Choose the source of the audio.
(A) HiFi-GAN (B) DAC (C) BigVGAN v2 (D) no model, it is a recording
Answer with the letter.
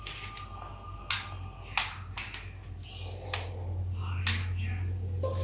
D